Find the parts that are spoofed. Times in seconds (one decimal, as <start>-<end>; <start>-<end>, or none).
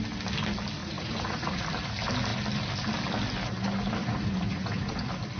0.8-1.6; 4.0-5.0